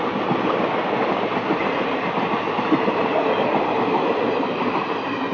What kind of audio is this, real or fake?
real